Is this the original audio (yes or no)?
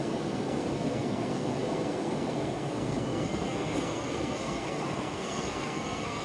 no